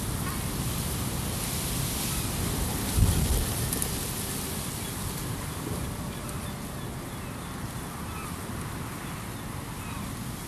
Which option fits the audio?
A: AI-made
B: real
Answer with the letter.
B